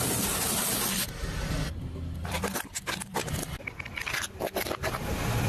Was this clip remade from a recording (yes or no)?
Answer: no